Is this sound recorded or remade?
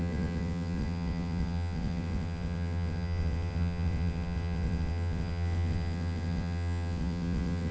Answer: remade